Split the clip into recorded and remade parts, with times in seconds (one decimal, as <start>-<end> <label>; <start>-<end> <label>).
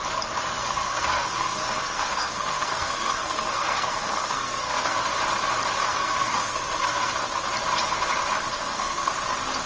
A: 0.0-0.6 recorded; 0.6-5.0 remade; 5.0-5.8 recorded; 5.8-7.1 remade; 7.1-8.5 recorded; 8.5-9.1 remade; 9.1-9.7 recorded